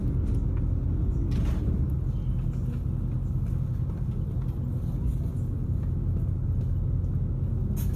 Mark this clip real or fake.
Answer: real